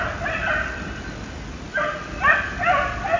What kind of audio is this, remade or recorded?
recorded